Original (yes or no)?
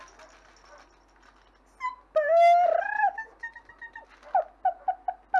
yes